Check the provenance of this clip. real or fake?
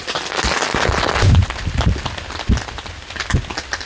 real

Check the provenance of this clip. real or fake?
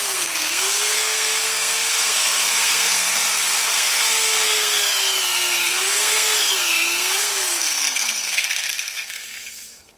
fake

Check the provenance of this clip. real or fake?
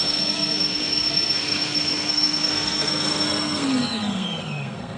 fake